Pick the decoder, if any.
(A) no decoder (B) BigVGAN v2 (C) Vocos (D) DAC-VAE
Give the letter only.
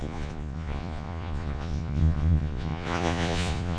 C